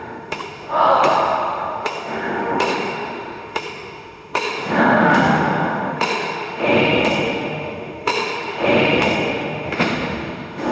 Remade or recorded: remade